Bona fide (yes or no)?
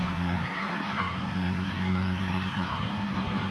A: no